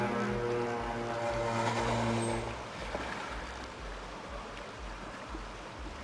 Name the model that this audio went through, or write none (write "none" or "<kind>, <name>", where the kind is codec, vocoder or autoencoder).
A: none